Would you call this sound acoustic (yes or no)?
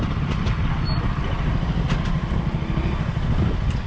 yes